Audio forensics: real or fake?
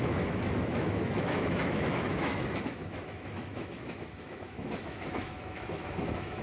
fake